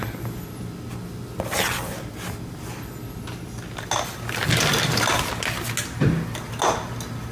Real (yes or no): yes